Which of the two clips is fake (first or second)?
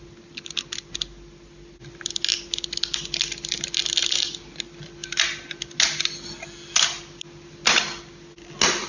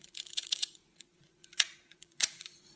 second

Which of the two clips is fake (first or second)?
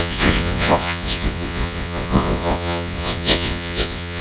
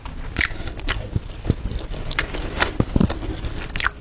first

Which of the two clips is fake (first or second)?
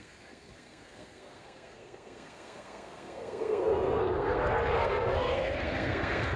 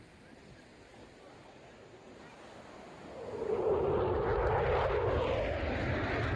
first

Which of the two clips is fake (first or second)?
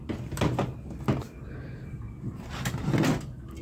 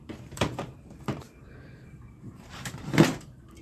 second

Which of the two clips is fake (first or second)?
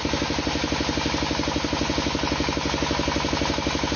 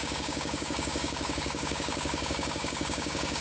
second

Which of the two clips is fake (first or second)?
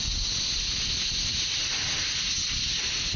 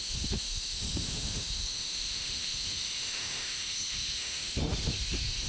second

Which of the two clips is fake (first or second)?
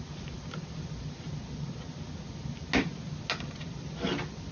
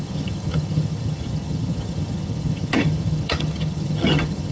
second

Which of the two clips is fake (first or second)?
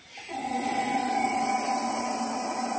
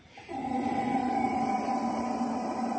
second